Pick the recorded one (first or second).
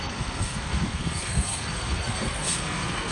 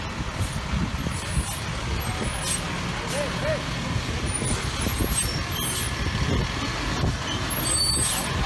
second